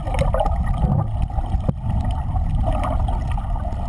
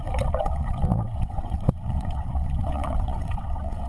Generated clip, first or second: second